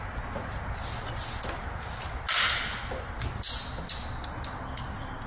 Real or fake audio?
real